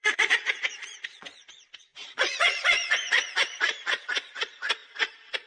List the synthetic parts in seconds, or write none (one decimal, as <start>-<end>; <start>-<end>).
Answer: 0.0-5.5